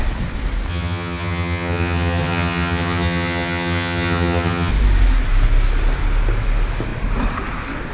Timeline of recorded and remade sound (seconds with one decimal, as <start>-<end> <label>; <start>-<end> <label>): 0.0-0.7 recorded; 0.7-4.7 remade; 4.7-7.9 recorded